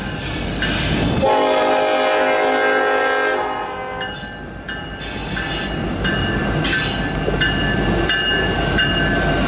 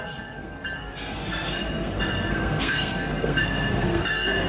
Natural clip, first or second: first